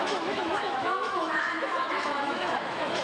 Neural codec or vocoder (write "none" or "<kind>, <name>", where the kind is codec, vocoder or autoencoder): autoencoder, DAC-VAE